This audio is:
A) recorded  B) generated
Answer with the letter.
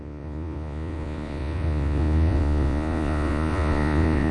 B